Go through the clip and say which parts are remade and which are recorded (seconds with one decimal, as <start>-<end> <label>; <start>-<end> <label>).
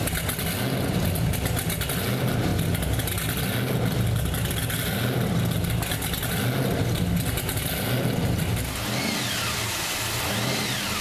0.0-11.0 recorded